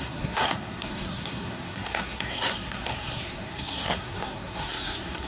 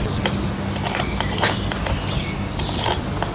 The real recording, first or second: second